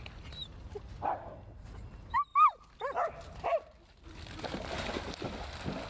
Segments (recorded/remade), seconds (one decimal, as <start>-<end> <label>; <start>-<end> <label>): 0.0-5.9 recorded

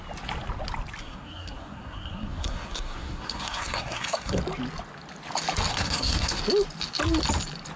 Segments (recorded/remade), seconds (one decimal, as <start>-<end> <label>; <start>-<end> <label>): 0.0-1.0 recorded; 1.0-4.4 remade; 4.4-5.7 recorded; 5.7-6.4 remade; 6.4-7.8 recorded